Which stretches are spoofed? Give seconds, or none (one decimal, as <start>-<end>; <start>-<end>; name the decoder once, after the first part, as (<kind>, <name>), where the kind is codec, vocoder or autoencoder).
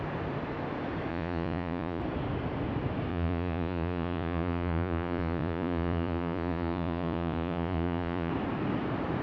1.1-2.0 (vocoder, Vocos); 3.1-8.3